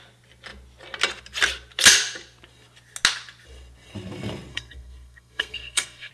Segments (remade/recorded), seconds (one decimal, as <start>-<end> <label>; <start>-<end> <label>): 0.0-4.5 recorded; 4.5-6.1 remade